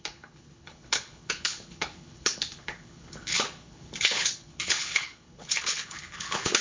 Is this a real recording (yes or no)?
no